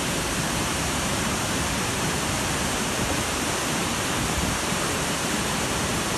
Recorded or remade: remade